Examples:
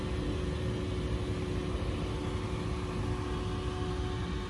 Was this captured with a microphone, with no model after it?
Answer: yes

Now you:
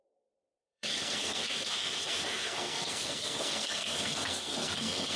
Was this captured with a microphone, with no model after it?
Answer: no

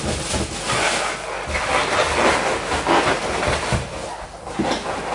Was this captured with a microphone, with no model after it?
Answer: yes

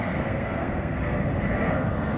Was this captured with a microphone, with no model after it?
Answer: no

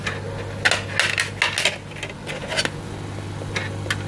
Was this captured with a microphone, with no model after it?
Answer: yes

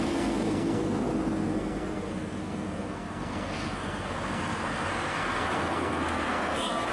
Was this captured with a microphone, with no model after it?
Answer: no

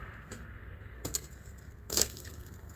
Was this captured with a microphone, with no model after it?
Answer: no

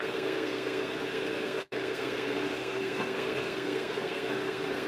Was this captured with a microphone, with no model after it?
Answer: no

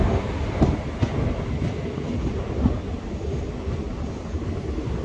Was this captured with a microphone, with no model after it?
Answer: yes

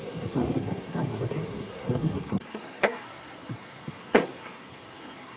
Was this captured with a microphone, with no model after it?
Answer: no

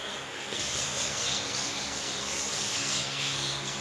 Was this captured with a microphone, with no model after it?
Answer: no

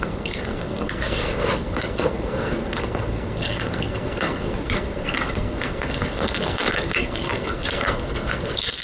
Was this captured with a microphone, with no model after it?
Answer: no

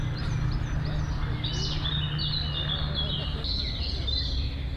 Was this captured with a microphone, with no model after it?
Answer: yes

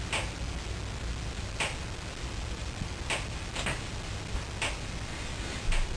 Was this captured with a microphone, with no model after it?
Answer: yes